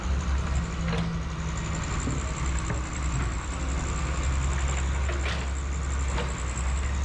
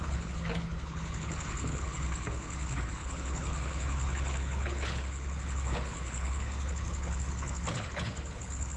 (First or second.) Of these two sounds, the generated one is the second